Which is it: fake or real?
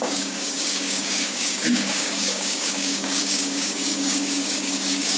fake